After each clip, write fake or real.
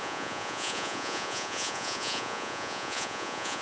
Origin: fake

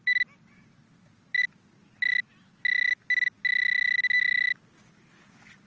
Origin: real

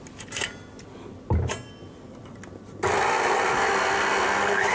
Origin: real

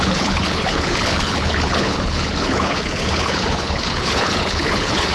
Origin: fake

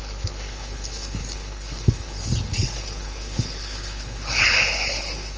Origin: fake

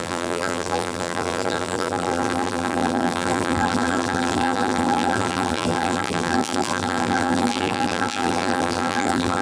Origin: fake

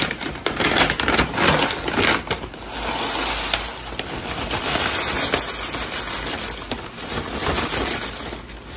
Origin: real